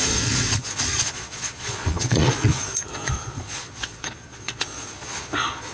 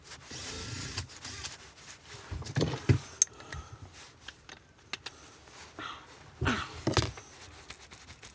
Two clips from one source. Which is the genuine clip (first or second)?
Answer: second